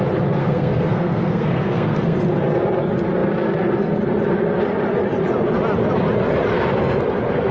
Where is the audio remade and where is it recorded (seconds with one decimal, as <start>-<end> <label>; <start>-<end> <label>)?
0.0-0.4 recorded; 0.4-2.2 remade; 2.2-7.5 recorded